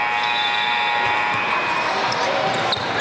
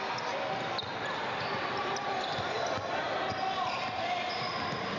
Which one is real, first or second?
second